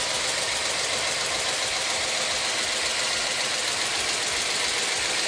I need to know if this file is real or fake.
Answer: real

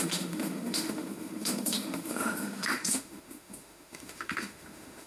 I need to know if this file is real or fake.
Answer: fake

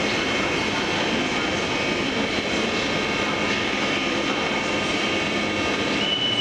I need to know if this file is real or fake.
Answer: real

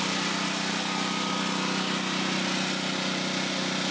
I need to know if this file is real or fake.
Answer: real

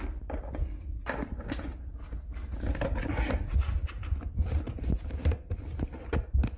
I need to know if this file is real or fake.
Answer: real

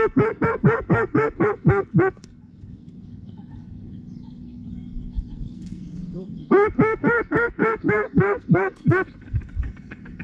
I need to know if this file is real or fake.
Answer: fake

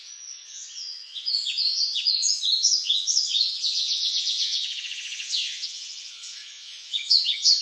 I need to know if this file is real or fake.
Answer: fake